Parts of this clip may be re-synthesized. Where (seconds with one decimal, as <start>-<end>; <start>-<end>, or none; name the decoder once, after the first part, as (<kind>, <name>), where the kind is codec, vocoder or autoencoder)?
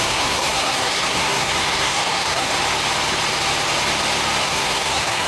0.0-2.5 (codec, SNAC); 4.4-5.3